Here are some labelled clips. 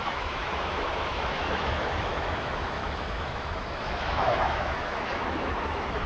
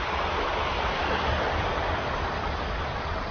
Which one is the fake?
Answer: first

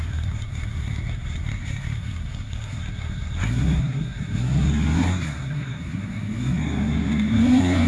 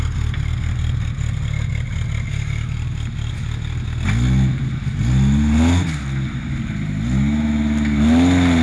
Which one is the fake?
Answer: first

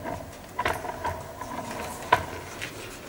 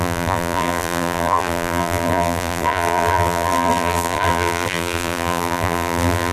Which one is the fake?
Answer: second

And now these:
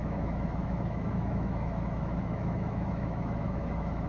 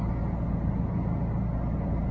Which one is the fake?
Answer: first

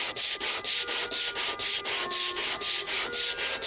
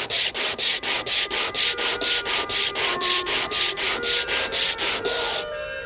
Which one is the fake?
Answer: second